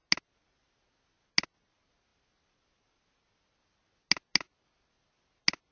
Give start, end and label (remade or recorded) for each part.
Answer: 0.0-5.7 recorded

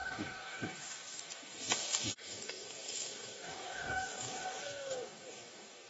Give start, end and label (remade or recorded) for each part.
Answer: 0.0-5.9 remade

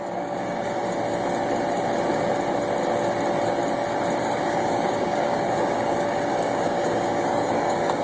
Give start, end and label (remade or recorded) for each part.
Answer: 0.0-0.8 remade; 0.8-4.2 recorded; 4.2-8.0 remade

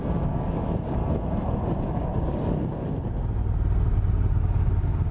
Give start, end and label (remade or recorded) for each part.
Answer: 0.0-1.0 remade; 1.0-1.9 recorded; 1.9-2.8 remade; 2.8-4.4 recorded; 4.4-5.1 remade